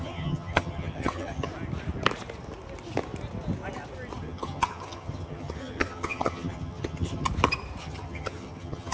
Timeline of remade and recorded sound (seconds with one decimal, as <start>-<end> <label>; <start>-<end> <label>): 0.0-1.5 remade; 1.5-4.2 recorded; 4.2-7.3 remade; 7.3-7.8 recorded; 7.8-8.9 remade